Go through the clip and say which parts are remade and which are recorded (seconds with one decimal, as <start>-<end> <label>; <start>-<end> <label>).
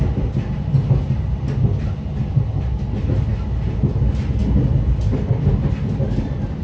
0.0-6.6 recorded